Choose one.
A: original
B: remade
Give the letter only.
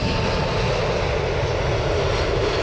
A